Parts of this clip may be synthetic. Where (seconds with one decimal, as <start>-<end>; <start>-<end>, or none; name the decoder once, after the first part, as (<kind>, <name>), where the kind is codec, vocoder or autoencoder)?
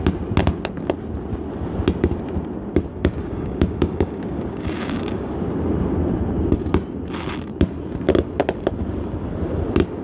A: 2.9-5.3 (codec, DAC)